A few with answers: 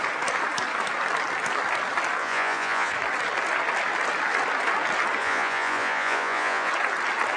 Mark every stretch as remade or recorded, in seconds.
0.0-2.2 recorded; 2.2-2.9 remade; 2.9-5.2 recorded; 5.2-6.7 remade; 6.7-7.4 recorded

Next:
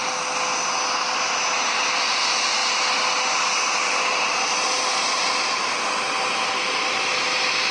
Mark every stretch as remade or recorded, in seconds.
0.0-7.7 recorded

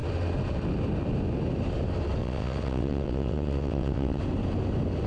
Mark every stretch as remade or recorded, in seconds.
0.0-2.2 recorded; 2.2-4.2 remade; 4.2-5.1 recorded

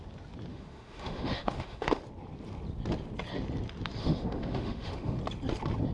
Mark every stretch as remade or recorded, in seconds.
0.0-0.5 recorded; 0.5-2.0 remade; 2.0-4.0 recorded; 4.0-5.2 remade; 5.2-5.9 recorded

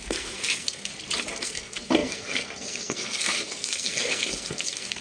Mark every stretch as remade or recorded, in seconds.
0.0-0.9 remade; 0.9-1.4 recorded; 1.4-5.0 remade